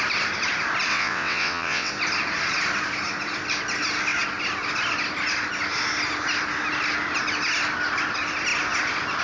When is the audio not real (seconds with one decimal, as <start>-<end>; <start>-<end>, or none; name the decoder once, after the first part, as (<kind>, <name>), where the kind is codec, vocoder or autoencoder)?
0.9-1.9 (vocoder, WaveNeXt)